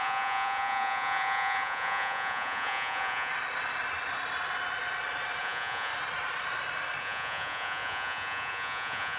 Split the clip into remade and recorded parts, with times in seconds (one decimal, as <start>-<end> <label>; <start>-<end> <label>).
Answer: 0.0-3.3 remade; 3.3-5.4 recorded; 5.4-5.9 remade; 5.9-7.0 recorded; 7.0-9.2 remade